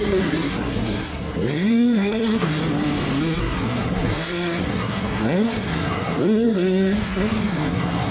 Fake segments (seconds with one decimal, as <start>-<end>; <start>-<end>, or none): 0.0-2.6; 3.4-8.1